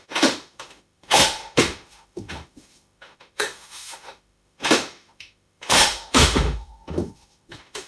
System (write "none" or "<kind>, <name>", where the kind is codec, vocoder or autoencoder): autoencoder, DAC-VAE